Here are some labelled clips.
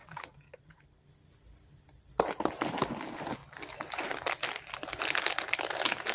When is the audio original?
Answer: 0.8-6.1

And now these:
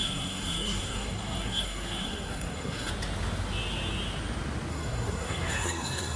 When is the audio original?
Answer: 2.9-4.7

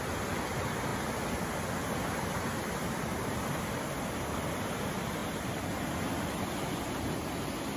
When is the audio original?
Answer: 0.0-7.8

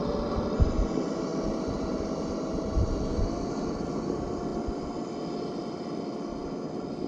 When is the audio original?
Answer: 0.0-1.3; 2.0-7.1

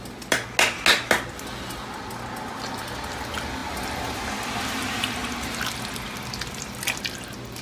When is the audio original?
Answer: 0.0-7.6

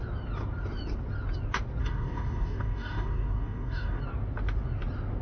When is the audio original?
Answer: 0.0-1.8; 4.0-5.2

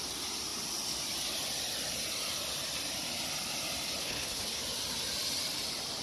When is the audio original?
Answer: 0.0-4.0; 4.6-6.0

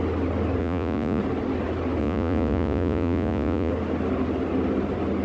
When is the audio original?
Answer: 0.0-0.6; 1.2-2.0; 3.7-5.2